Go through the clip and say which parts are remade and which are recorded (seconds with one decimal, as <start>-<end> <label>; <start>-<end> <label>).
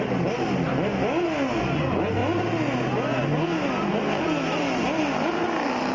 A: 0.0-5.9 recorded